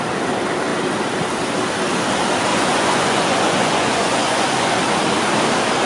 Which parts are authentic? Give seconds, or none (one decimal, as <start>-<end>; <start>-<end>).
0.0-2.5; 4.8-5.9